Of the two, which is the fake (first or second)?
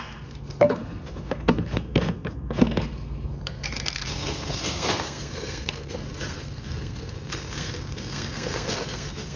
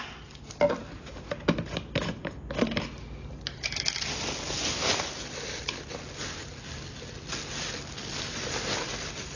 first